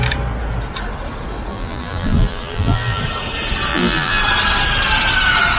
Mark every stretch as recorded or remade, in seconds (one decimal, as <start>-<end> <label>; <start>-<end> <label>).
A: 0.0-1.5 recorded; 1.5-3.0 remade; 3.0-3.7 recorded; 3.7-4.2 remade; 4.2-5.6 recorded